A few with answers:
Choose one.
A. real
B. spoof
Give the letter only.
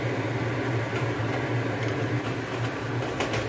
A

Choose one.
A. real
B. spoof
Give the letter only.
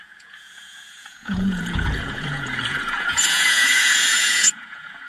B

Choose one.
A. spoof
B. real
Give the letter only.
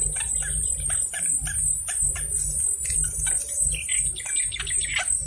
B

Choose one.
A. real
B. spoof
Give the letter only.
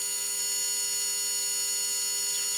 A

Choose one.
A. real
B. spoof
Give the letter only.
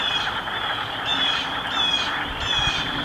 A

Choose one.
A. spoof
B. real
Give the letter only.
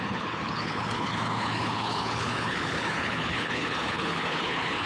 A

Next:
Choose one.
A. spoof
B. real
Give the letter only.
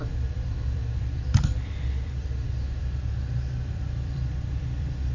A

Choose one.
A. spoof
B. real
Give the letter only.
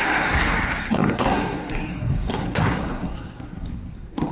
A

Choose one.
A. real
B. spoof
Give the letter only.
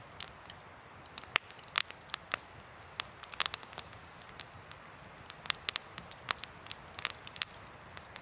A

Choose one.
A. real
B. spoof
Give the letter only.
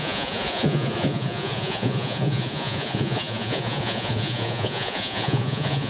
B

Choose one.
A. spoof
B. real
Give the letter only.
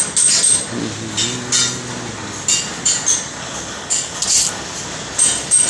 B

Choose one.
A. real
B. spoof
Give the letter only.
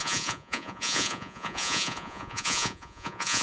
B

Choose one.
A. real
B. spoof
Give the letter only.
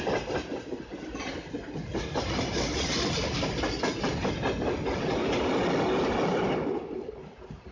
A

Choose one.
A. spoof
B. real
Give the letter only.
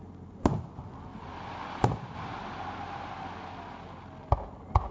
B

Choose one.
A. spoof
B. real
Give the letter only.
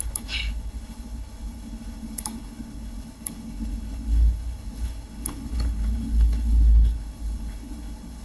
A